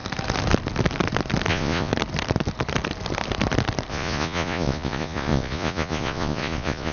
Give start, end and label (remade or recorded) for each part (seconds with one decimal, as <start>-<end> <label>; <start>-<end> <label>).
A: 0.0-1.5 recorded; 1.5-1.9 remade; 1.9-3.9 recorded; 3.9-6.9 remade